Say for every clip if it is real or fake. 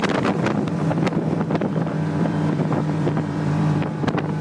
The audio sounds fake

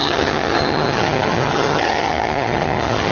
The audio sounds fake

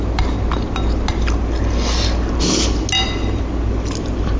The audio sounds real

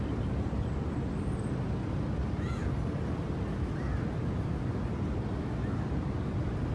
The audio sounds real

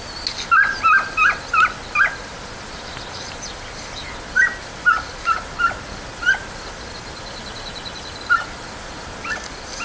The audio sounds real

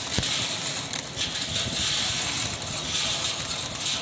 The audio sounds fake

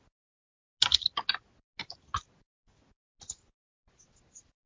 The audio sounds real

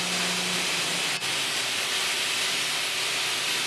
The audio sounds real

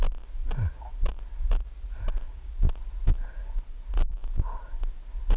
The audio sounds real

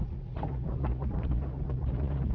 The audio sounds fake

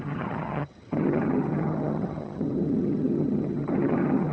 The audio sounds fake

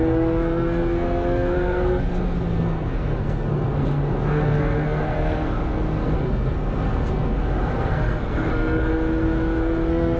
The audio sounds fake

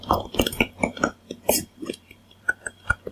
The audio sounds fake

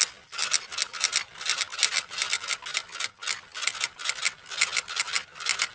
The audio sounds real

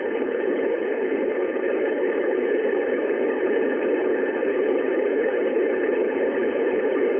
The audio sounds fake